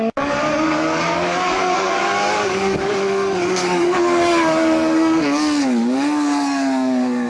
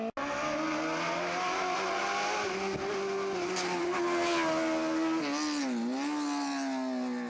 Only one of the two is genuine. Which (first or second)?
second